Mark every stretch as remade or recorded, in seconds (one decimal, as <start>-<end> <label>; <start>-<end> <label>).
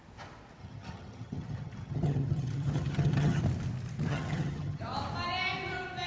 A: 0.0-0.6 recorded; 0.6-3.4 remade; 3.4-4.1 recorded; 4.1-4.8 remade; 4.8-6.1 recorded